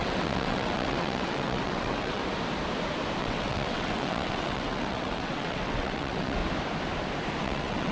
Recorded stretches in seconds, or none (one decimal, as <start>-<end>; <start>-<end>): 2.2-3.2; 6.4-7.4